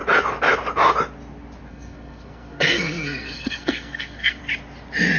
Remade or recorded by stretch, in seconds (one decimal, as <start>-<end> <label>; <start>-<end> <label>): 0.0-1.7 recorded; 1.7-4.4 remade; 4.4-5.2 recorded